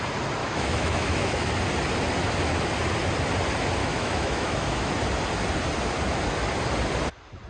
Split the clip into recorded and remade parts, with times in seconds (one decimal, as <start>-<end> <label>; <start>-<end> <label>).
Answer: 0.0-0.4 recorded; 0.4-1.5 remade; 1.5-3.8 recorded; 3.8-4.9 remade; 4.9-7.5 recorded